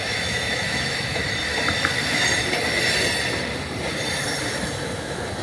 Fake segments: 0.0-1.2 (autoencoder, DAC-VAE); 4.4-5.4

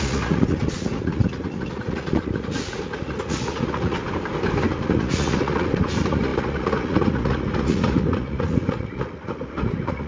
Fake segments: 0.0-4.0 (vocoder, Vocos); 4.7-10.1